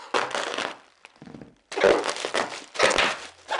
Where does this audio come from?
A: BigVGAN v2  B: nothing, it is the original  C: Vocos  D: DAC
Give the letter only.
B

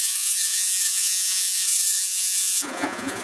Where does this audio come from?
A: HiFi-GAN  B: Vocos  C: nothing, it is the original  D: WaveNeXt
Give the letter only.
B